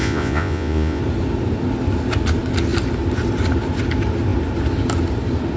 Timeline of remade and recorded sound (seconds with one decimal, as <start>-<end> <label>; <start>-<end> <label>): 0.0-1.0 remade; 1.0-5.6 recorded